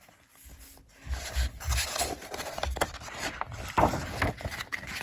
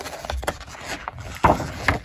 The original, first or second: first